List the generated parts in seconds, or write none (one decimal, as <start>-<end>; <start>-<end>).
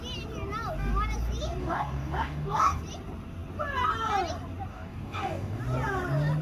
1.6-2.8; 4.7-5.6